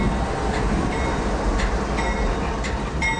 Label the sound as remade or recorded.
recorded